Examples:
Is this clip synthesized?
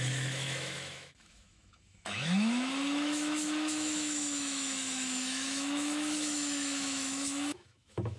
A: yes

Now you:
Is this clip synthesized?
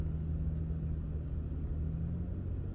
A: no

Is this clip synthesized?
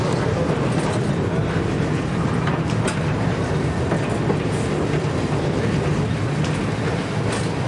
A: no